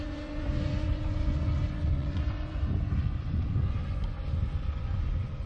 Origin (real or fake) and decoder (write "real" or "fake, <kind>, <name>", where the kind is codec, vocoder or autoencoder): fake, vocoder, Vocos